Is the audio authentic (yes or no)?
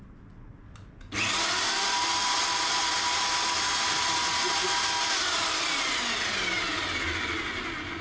yes